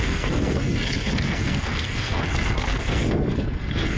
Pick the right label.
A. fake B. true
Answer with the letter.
A